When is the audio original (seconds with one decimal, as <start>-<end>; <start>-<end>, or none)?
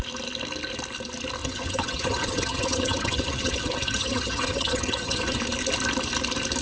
0.0-1.4; 5.4-6.6